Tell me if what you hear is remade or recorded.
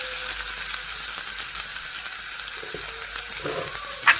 recorded